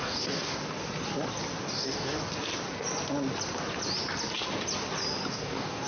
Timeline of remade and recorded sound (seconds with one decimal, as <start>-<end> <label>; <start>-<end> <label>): 0.0-0.5 remade; 0.5-1.6 recorded; 1.6-2.2 remade; 2.2-5.3 recorded; 5.3-5.9 remade